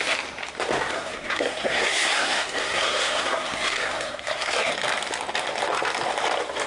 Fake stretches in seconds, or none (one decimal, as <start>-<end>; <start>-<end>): 0.9-4.7

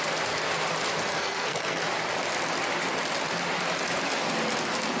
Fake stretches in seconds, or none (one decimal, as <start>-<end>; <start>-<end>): 1.1-1.8

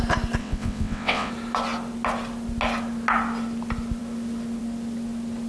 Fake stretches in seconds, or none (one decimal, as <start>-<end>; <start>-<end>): 0.4-1.3

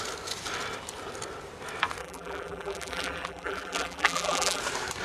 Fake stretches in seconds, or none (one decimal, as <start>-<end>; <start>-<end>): 2.0-4.6

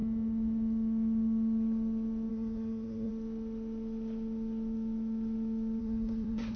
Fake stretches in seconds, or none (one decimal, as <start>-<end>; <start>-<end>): 2.3-3.1; 5.8-6.6

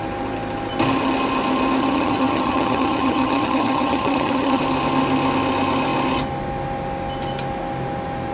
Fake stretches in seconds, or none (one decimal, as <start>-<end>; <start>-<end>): 1.8-4.6